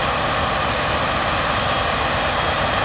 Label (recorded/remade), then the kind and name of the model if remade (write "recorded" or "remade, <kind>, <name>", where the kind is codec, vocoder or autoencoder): recorded